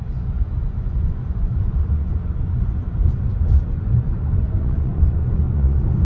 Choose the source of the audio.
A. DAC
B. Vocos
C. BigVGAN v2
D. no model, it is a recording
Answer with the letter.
B